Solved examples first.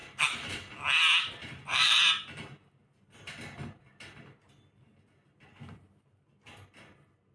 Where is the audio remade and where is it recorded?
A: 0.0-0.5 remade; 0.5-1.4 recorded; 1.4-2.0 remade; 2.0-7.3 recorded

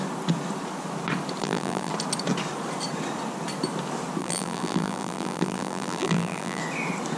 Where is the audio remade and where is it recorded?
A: 0.0-1.4 recorded; 1.4-1.9 remade; 1.9-4.2 recorded; 4.2-6.6 remade; 6.6-7.2 recorded

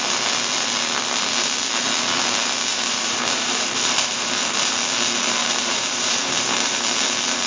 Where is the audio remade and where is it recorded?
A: 0.0-2.7 recorded; 2.7-4.7 remade; 4.7-5.4 recorded; 5.4-6.7 remade; 6.7-7.5 recorded

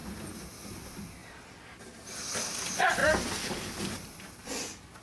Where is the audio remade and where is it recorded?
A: 0.0-5.0 recorded

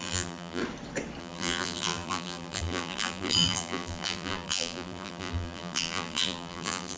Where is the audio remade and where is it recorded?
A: 0.0-0.6 remade; 0.6-1.2 recorded; 1.2-7.0 remade

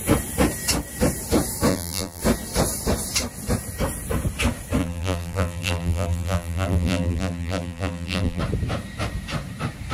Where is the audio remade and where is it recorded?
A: 0.0-1.7 recorded; 1.7-2.2 remade; 2.2-4.8 recorded; 4.8-8.4 remade; 8.4-9.9 recorded